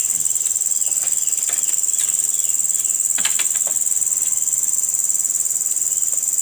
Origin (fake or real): real